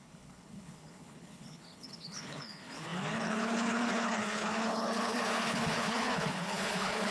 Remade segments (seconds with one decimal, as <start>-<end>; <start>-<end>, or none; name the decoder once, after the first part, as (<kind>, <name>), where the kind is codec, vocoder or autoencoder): 0.0-7.1 (codec, HILCodec)